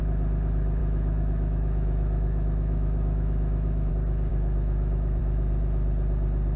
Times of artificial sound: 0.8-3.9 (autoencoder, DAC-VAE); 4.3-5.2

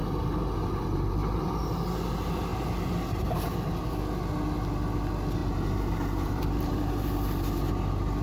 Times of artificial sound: 0.0-1.5 (vocoder, BigVGAN v2); 2.5-4.0; 5.4-7.7